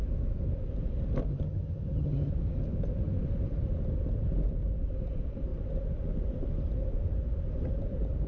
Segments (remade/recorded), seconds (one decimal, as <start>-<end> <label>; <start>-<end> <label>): 0.0-1.3 recorded; 1.3-2.3 remade; 2.3-8.3 recorded